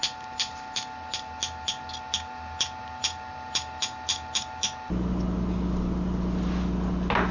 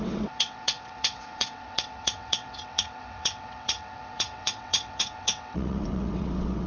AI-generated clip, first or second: second